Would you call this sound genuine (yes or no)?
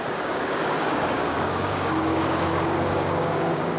no